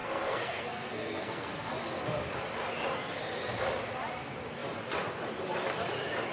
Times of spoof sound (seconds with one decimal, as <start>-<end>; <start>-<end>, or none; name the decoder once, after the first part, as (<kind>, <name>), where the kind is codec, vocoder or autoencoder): 0.0-1.7 (codec, SNAC)